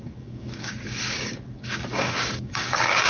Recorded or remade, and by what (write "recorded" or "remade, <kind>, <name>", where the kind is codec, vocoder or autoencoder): remade, codec, DAC